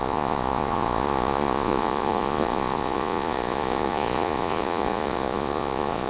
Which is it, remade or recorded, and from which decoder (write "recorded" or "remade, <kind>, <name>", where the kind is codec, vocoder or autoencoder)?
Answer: remade, vocoder, Vocos